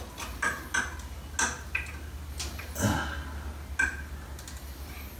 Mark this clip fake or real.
real